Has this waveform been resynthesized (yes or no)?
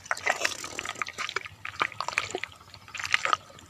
no